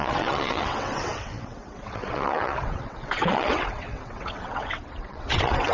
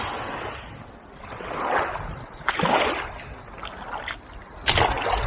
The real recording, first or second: second